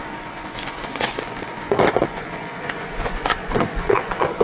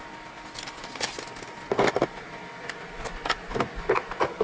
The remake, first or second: first